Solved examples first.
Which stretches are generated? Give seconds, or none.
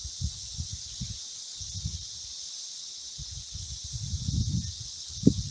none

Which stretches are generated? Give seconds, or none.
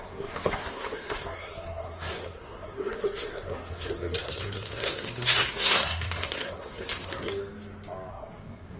0.0-7.3 (codec, SNAC); 8.1-8.8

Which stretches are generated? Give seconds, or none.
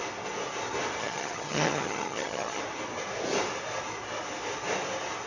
1.0-2.6 (vocoder, HiFi-GAN)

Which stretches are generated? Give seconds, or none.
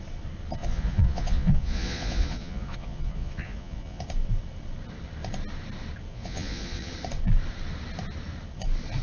0.6-4.0 (vocoder, Vocos); 6.1-6.9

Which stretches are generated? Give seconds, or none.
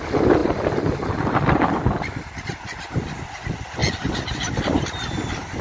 none